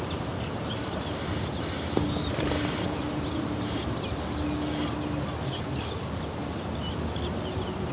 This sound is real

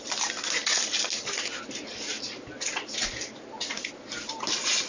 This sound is real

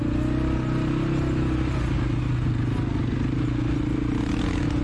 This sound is real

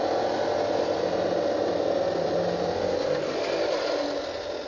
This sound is real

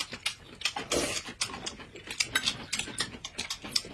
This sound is real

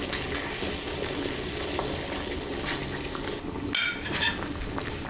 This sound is real